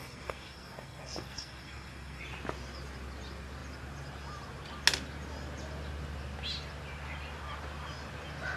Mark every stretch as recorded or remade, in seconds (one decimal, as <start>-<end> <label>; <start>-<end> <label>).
0.0-2.2 remade; 2.2-8.6 recorded

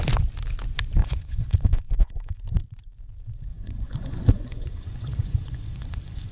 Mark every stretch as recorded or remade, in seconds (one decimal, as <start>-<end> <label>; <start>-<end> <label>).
0.0-1.0 recorded; 1.0-2.4 remade; 2.4-3.5 recorded; 3.5-6.3 remade

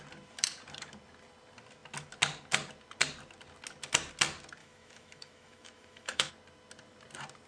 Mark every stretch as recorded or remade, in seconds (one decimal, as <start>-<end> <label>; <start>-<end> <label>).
0.0-4.6 recorded; 4.6-6.3 remade; 6.3-7.5 recorded